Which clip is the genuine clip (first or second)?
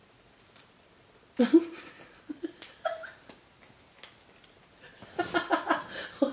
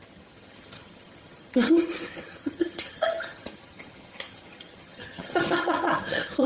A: first